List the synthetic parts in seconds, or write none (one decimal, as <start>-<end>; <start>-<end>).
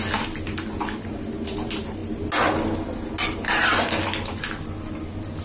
none